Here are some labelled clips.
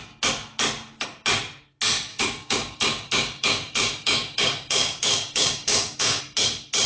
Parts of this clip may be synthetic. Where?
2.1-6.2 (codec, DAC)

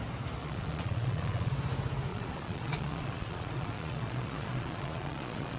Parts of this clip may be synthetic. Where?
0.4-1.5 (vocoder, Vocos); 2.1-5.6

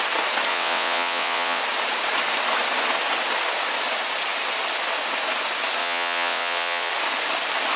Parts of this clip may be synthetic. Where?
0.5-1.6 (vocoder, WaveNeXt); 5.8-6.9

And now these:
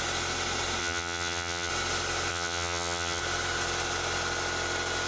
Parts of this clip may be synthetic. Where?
0.8-1.7 (vocoder, HiFi-GAN); 2.3-3.2